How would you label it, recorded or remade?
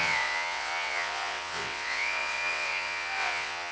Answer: remade